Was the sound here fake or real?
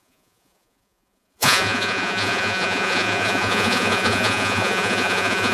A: fake